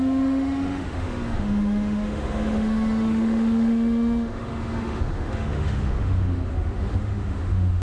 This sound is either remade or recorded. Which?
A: remade